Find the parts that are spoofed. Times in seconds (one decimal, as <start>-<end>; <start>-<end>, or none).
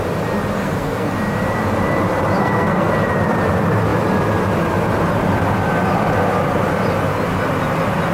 0.6-1.1; 2.4-2.9